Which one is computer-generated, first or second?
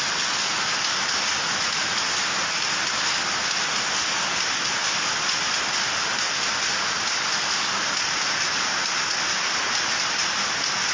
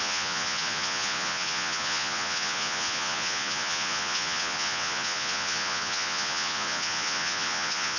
second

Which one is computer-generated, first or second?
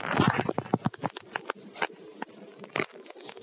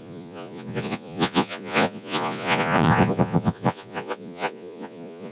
second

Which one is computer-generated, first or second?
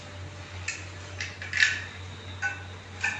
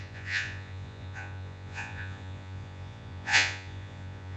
second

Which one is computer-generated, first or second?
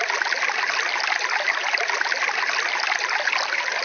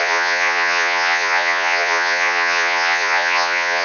second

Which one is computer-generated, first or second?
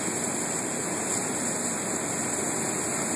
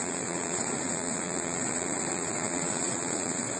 second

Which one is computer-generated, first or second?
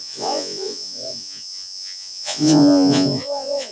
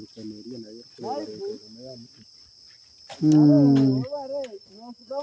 first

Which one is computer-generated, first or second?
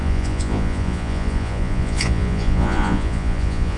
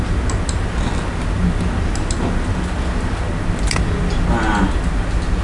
first